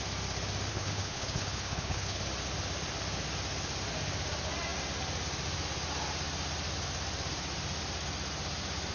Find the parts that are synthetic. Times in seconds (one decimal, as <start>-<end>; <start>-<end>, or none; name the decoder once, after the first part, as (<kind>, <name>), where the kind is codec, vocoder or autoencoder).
0.7-2.2 (codec, HILCodec)